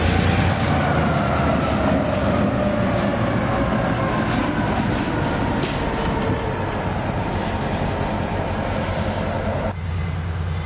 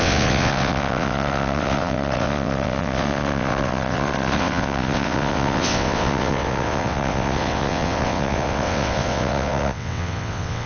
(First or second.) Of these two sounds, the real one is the first